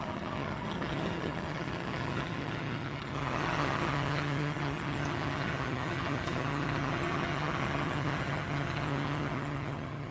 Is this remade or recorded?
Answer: remade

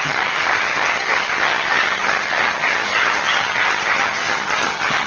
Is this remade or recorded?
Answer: remade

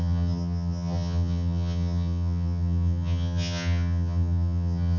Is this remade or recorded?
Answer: remade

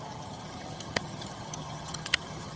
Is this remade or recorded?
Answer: remade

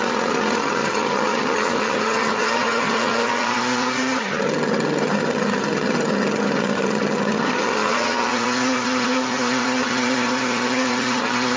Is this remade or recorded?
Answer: remade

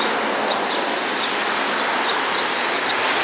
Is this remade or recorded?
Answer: recorded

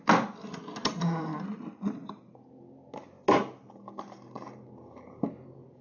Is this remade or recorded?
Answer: recorded